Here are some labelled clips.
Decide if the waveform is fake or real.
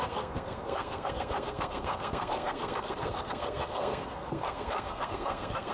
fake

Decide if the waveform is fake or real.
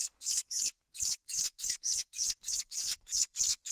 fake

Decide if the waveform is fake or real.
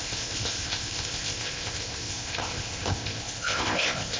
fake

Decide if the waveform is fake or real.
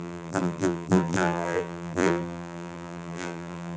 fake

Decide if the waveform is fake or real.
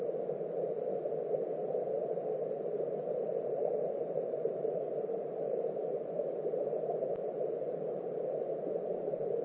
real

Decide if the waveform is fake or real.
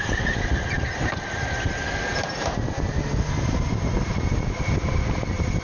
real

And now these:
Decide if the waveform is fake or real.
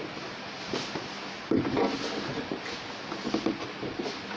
real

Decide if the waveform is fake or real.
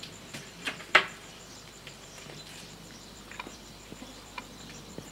fake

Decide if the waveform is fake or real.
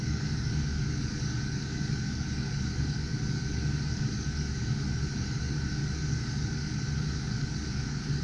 fake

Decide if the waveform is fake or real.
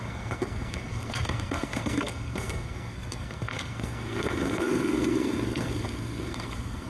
fake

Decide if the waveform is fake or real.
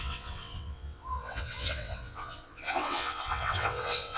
fake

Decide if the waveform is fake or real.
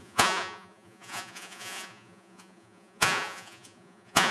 fake